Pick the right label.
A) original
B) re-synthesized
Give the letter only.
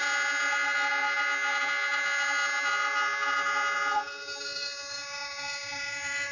B